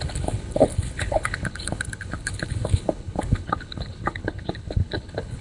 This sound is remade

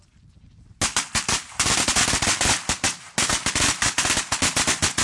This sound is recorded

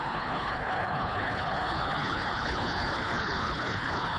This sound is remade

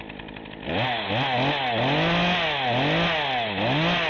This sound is recorded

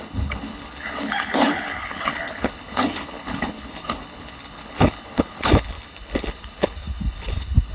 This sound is remade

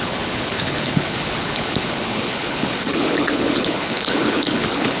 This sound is remade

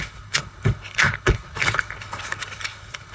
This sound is remade